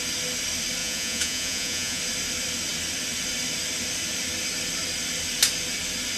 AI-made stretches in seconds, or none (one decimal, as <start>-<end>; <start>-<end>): 0.8-2.0